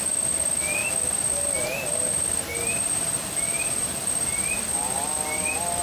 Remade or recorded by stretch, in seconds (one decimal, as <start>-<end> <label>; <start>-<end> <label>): 0.0-5.8 recorded

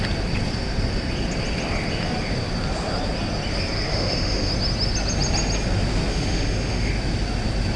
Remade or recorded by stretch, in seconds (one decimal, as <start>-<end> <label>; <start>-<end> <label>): 0.0-3.9 recorded; 3.9-4.5 remade; 4.5-6.1 recorded; 6.1-6.9 remade; 6.9-7.8 recorded

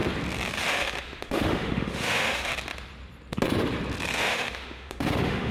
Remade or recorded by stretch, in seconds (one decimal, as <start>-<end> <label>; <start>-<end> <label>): 0.0-0.7 recorded; 0.7-2.5 remade; 2.5-4.2 recorded; 4.2-5.5 remade

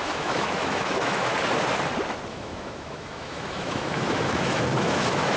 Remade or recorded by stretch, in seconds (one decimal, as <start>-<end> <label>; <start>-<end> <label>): 0.0-1.3 remade; 1.3-2.3 recorded; 2.3-5.4 remade

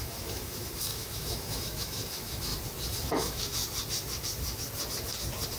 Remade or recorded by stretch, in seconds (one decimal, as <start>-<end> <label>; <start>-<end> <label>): 0.0-2.5 remade; 2.5-3.1 recorded; 3.1-3.6 remade; 3.6-5.6 recorded

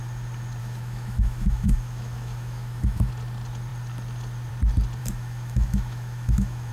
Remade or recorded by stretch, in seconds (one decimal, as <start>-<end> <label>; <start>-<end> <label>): 0.0-0.6 recorded; 0.6-3.1 remade; 3.1-5.0 recorded; 5.0-6.7 remade